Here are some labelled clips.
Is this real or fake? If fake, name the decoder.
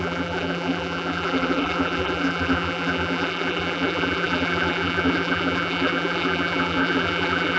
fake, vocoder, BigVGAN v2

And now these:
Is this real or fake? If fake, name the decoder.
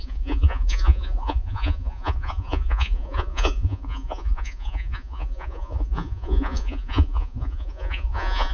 fake, vocoder, Vocos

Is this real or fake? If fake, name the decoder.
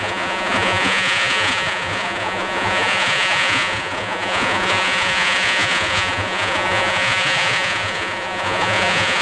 fake, vocoder, Vocos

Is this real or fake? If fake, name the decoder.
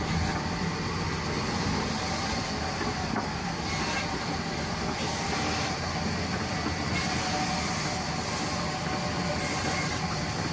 real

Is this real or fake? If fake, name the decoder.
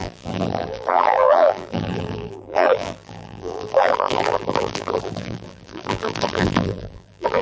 fake, vocoder, BigVGAN v2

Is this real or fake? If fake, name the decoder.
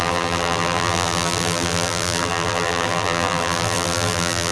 fake, vocoder, BigVGAN v2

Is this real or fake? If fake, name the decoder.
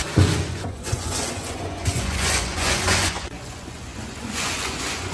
fake, vocoder, Vocos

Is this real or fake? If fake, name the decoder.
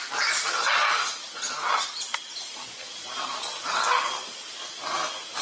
real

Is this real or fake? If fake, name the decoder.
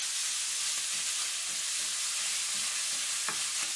real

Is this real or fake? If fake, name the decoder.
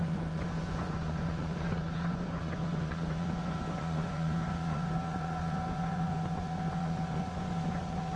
fake, vocoder, Vocos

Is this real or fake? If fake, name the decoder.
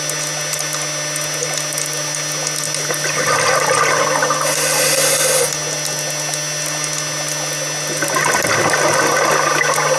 real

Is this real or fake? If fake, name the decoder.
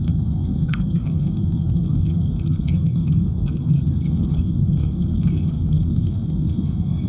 fake, codec, SNAC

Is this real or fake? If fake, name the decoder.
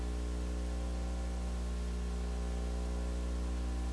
real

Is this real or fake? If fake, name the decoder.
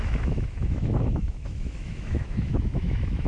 fake, autoencoder, DAC-VAE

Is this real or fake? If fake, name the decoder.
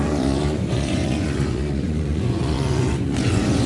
fake, vocoder, Vocos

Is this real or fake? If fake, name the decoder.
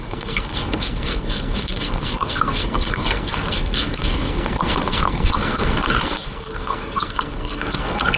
fake, codec, SNAC